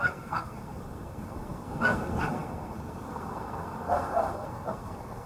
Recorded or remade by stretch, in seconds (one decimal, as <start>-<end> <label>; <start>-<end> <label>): 0.0-5.3 remade